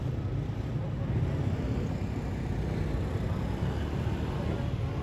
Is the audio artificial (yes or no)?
no